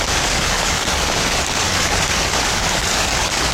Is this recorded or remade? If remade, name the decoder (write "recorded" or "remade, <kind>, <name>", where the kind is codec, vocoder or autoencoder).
remade, codec, DAC